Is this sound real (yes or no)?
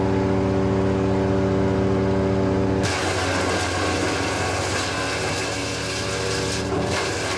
yes